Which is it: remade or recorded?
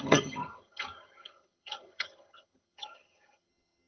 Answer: remade